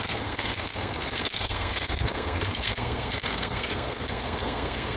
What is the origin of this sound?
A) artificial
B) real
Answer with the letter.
A